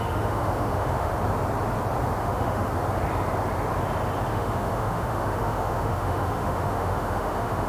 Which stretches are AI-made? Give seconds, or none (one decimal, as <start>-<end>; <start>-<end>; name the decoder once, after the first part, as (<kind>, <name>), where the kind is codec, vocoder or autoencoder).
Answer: 0.0-1.1 (autoencoder, DAC-VAE); 2.2-2.7; 4.3-7.7